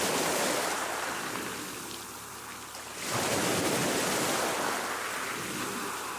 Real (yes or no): yes